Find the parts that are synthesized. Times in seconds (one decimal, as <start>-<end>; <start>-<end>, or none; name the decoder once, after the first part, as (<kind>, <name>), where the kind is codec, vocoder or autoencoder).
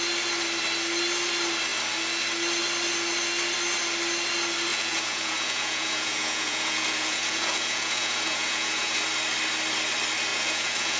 4.7-9.0 (vocoder, Vocos); 10.3-11.0